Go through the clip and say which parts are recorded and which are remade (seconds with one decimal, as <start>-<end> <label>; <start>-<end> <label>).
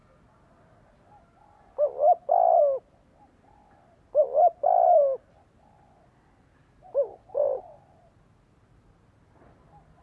0.0-10.0 recorded